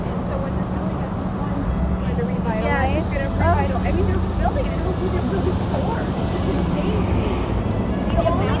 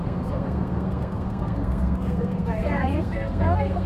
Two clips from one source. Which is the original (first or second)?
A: first